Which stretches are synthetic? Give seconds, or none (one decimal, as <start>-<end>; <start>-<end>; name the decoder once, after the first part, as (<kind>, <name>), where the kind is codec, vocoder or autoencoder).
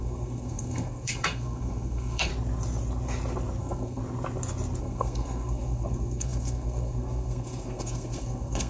0.0-2.3 (codec, SNAC); 3.6-4.0; 4.8-8.7